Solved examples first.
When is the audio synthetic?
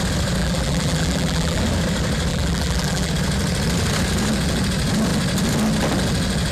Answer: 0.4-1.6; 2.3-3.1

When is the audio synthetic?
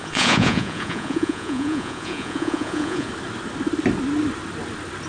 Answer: 0.0-3.1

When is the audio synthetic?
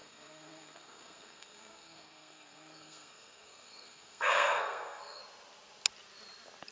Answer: 0.0-5.2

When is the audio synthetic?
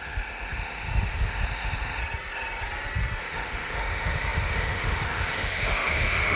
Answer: 0.0-2.0; 3.2-6.4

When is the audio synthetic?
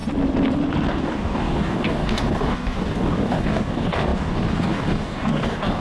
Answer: 0.9-5.8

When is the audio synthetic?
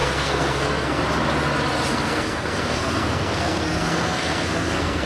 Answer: 0.0-1.0; 1.9-5.1